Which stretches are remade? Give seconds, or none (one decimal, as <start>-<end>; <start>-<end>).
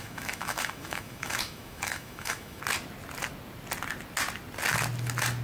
0.0-2.6